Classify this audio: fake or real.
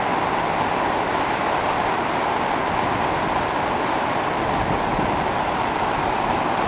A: real